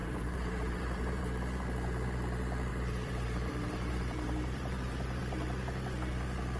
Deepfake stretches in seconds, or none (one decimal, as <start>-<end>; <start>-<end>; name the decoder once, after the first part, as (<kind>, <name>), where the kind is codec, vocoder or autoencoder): 0.0-1.2 (vocoder, BigVGAN v2); 2.7-5.2